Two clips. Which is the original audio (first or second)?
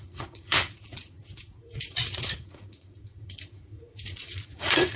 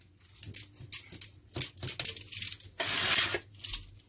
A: second